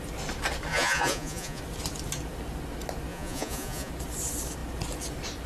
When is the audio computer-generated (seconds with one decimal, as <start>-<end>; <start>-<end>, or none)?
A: 0.7-1.6; 3.1-3.9